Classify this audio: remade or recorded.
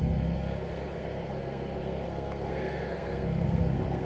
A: remade